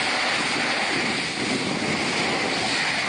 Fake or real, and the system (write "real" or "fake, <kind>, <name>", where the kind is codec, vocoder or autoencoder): real